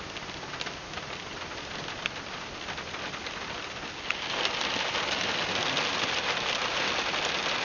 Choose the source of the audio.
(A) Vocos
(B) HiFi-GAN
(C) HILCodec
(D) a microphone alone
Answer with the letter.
D